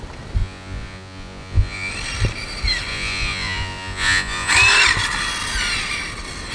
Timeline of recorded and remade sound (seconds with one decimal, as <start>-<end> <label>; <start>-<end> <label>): 0.0-0.4 recorded; 0.4-1.9 remade; 1.9-2.9 recorded; 2.9-4.5 remade; 4.5-6.5 recorded